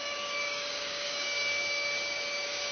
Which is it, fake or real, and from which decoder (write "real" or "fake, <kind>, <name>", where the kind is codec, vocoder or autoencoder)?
fake, codec, DAC